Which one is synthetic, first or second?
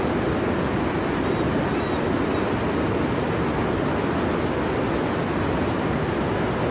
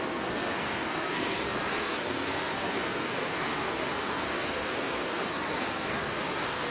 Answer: second